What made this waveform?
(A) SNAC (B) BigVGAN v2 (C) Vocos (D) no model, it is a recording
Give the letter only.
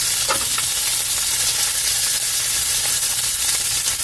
D